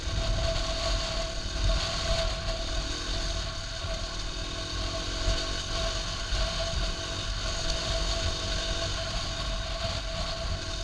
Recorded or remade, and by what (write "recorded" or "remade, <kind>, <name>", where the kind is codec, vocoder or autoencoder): recorded